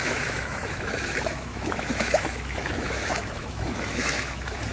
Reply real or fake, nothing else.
fake